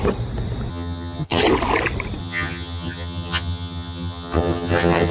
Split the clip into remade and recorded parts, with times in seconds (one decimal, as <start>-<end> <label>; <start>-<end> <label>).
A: 0.0-0.7 recorded; 0.7-1.4 remade; 1.4-2.2 recorded; 2.2-5.1 remade